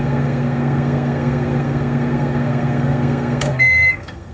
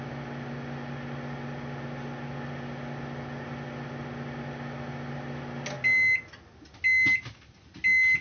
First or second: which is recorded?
second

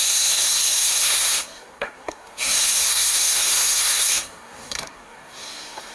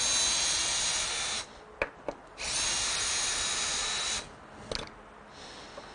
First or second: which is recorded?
second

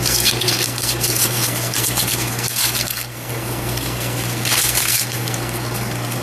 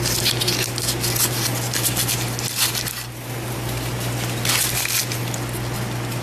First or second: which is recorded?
second